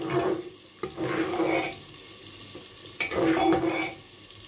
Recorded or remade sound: recorded